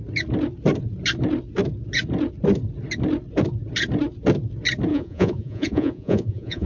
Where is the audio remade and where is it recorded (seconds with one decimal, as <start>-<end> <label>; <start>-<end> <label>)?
0.0-4.9 recorded; 4.9-6.7 remade